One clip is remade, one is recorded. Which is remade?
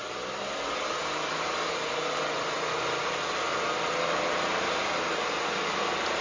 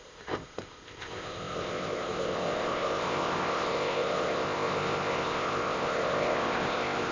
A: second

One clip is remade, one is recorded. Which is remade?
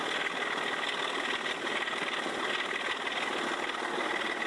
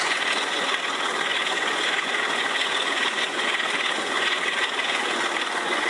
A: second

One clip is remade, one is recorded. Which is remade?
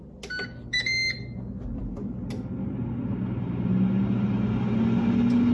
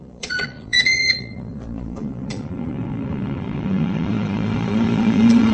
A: second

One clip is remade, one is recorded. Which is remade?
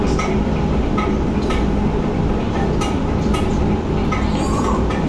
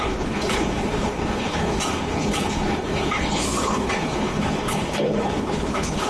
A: second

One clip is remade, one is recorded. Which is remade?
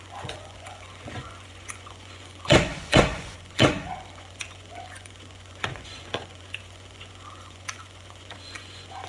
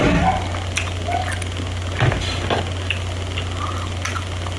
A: first